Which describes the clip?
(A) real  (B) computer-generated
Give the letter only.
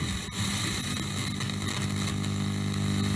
A